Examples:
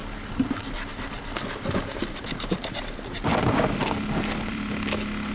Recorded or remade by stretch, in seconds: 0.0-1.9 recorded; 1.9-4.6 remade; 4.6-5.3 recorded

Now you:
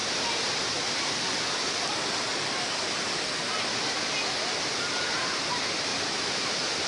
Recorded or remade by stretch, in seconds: 0.0-1.5 remade; 1.5-5.9 recorded; 5.9-6.9 remade

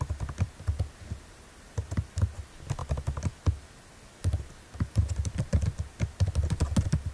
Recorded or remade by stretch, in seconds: 0.0-7.1 recorded

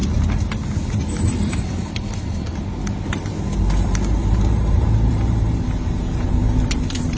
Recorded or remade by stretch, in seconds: 0.0-3.8 recorded; 3.8-7.2 remade